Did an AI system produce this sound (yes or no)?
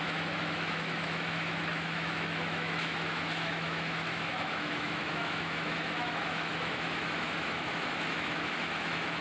yes